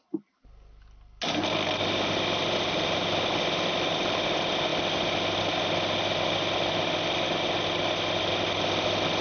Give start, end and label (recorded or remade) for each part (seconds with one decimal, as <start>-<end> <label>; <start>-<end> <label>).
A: 0.0-9.2 recorded